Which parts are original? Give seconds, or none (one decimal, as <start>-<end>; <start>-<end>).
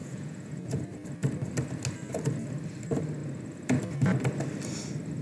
0.8-5.2